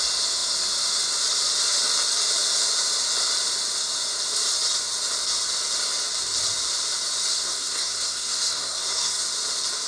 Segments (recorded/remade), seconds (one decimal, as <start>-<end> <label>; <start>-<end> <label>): 0.0-7.3 recorded; 7.3-9.2 remade; 9.2-9.9 recorded